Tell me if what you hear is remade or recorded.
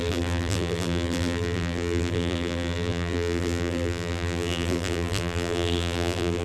remade